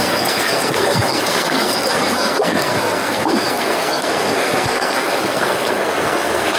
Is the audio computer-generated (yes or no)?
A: yes